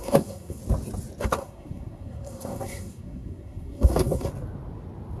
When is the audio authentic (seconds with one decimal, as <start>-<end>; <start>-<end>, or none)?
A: 0.6-1.2; 4.3-5.2